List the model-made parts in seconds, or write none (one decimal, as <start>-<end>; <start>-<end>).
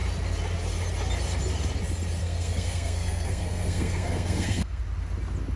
2.2-4.8